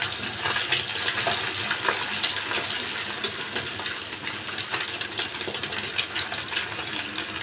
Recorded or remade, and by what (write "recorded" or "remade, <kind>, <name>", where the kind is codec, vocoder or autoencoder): recorded